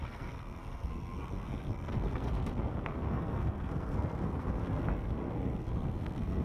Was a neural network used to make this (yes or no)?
yes